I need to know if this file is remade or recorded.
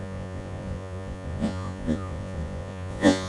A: remade